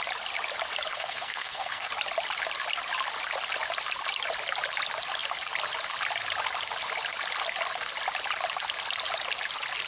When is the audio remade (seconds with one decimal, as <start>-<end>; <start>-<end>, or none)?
0.9-1.9